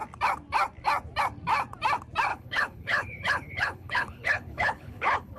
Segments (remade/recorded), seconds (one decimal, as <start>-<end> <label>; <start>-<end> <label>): 0.0-2.3 recorded; 2.3-5.4 remade